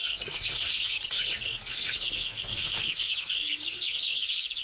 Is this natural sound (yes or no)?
no